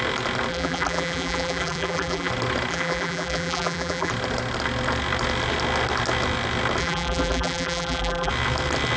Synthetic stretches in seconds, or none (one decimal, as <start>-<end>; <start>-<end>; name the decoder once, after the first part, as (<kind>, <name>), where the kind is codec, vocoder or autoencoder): 0.5-2.3 (vocoder, BigVGAN v2); 2.7-4.1; 6.8-8.3